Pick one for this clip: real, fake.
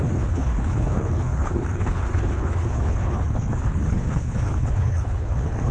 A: fake